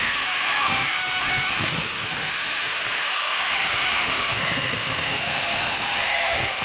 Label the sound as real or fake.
fake